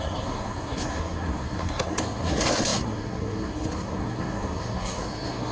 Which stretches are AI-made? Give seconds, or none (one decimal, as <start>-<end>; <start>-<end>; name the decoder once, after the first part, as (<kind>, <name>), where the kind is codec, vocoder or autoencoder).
0.0-5.5 (codec, SNAC)